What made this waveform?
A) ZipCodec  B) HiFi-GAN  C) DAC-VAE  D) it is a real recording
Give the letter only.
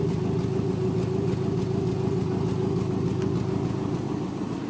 D